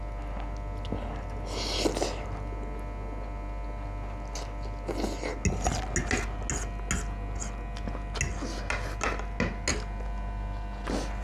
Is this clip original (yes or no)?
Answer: yes